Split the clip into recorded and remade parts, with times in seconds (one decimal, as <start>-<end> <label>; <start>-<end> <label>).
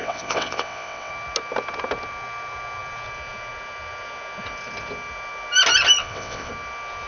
0.0-1.1 remade; 1.1-6.0 recorded; 6.0-6.5 remade; 6.5-7.1 recorded